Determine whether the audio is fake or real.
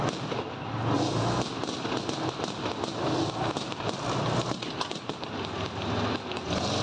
real